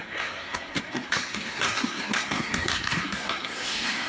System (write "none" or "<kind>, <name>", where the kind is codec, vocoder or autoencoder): codec, SNAC